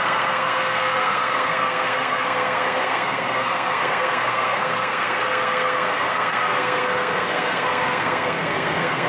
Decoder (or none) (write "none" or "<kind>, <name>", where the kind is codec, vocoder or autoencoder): codec, SNAC